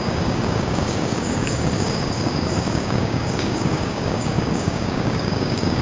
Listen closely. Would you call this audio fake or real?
fake